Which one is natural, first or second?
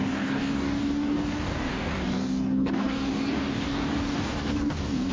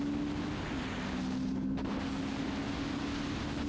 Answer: second